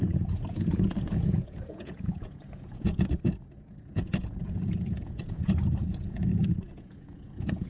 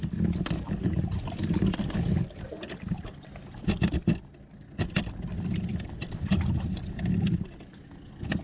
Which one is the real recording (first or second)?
second